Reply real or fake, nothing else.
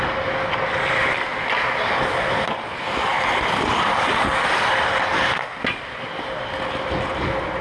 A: real